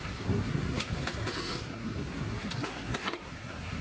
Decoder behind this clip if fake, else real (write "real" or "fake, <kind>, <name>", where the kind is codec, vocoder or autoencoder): fake, codec, SNAC